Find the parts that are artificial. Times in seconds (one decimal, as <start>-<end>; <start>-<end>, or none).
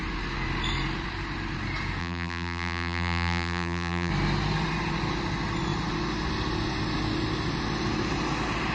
2.0-4.1